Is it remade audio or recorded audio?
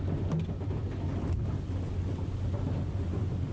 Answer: recorded